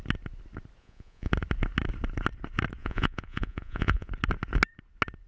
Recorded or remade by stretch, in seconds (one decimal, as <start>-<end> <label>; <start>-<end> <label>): 0.0-0.8 recorded; 0.8-1.3 remade; 1.3-2.8 recorded; 2.8-4.1 remade; 4.1-5.3 recorded